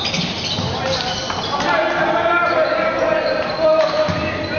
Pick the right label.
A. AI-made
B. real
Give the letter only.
B